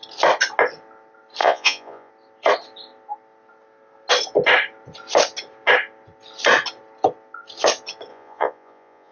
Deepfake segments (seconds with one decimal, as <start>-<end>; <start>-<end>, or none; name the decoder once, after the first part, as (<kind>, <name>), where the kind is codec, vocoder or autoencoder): 1.4-2.1 (vocoder, Vocos); 8.1-9.1